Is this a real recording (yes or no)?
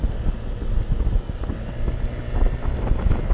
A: yes